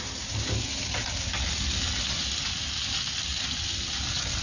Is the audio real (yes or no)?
yes